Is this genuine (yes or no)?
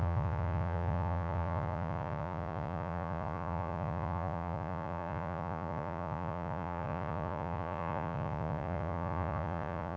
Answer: no